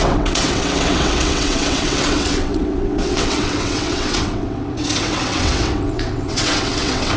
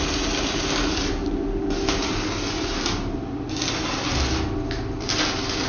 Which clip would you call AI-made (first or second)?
first